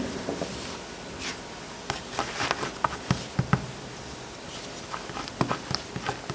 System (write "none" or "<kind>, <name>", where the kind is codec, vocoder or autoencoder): none